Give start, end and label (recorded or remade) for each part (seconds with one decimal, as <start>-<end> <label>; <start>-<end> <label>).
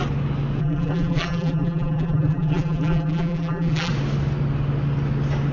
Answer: 0.0-0.6 recorded; 0.6-3.9 remade; 3.9-5.5 recorded